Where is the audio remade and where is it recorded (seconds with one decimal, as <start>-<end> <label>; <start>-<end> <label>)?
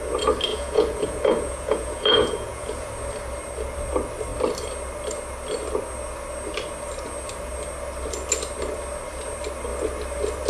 0.0-0.5 recorded; 0.5-2.9 remade; 2.9-10.5 recorded